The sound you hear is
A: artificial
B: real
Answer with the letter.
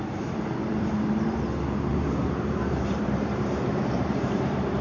A